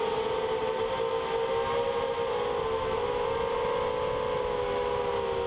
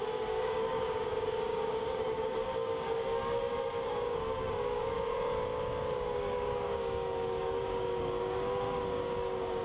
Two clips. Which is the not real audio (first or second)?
second